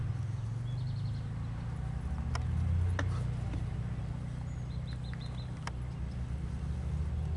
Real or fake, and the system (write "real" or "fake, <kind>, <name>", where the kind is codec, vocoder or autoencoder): real